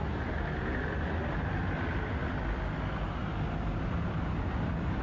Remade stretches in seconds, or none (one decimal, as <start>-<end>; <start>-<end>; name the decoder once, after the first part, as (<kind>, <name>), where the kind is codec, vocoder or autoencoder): none

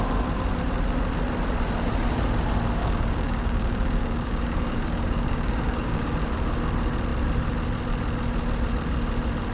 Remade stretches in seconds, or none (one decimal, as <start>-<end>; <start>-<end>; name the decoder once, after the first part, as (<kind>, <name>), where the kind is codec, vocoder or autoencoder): 2.8-6.0 (codec, DAC)

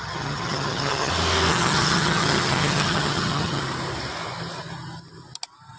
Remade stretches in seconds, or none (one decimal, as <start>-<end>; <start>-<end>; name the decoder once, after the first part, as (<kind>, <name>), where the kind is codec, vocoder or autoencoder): 0.0-1.1 (vocoder, HiFi-GAN); 1.5-3.6